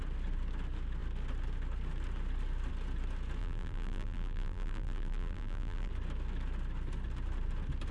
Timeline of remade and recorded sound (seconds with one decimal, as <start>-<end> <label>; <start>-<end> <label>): 0.0-3.4 recorded; 3.4-5.9 remade; 5.9-7.9 recorded